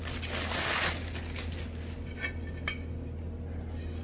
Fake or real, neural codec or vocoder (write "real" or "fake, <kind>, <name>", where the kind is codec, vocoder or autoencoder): real